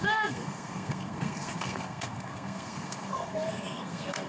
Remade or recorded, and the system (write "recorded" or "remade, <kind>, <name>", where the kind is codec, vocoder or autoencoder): remade, codec, SNAC